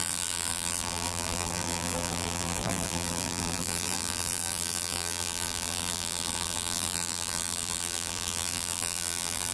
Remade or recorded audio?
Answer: remade